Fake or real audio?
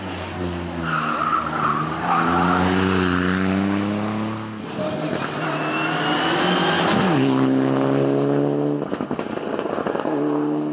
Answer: real